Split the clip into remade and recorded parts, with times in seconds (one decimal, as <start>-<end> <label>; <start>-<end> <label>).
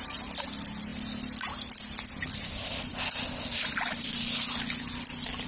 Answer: 0.0-5.5 recorded